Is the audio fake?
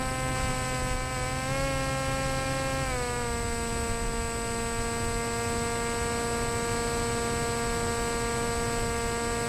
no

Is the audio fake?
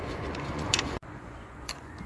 yes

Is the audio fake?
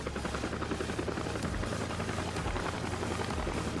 no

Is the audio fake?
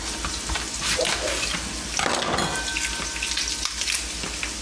no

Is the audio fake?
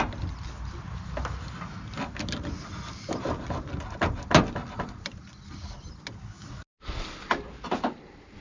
no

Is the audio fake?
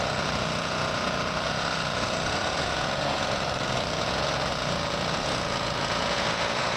yes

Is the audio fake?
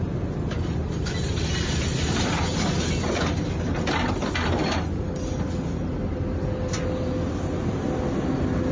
no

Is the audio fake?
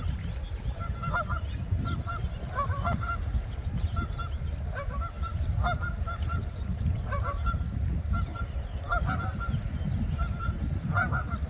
no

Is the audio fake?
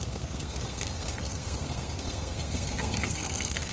yes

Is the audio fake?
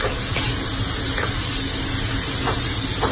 no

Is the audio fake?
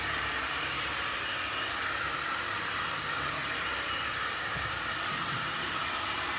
yes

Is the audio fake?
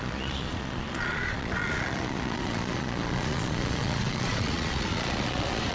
yes